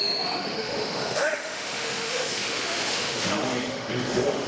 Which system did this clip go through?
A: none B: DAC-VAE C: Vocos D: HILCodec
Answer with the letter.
B